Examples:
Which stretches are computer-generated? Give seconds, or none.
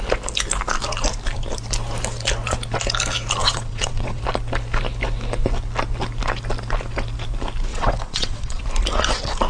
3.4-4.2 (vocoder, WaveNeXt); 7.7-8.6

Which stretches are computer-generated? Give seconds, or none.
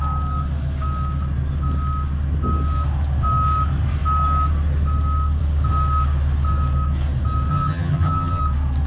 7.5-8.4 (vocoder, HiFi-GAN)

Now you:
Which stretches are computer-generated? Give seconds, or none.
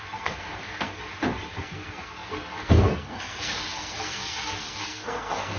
0.0-1.0 (codec, SNAC); 1.6-5.6